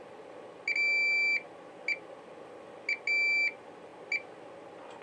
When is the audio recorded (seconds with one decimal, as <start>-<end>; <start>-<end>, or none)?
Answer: 0.0-5.0